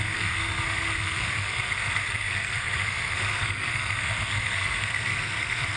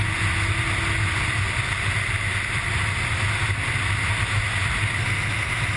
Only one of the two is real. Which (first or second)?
second